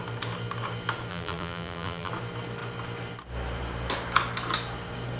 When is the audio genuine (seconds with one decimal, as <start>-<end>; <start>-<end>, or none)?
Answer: 0.0-1.1; 2.1-5.2